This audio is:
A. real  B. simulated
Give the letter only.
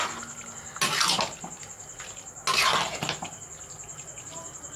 A